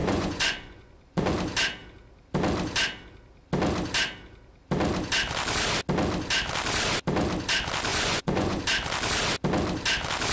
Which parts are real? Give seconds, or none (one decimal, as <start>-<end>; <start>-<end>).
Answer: 1.3-7.9; 8.6-10.3